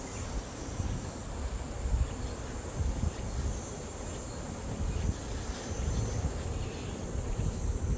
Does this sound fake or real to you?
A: real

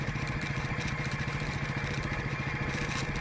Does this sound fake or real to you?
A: fake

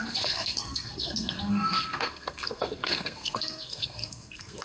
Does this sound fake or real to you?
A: fake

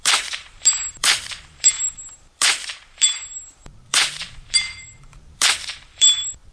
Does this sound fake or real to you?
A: fake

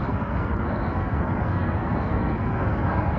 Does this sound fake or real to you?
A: fake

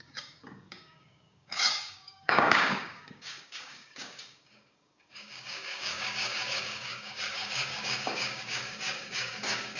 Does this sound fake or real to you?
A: fake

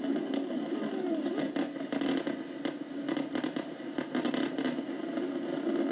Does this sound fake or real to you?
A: real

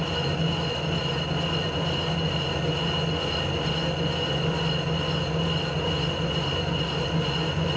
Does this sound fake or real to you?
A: real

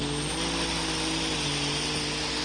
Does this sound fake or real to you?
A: real